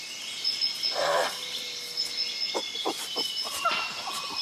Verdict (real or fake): real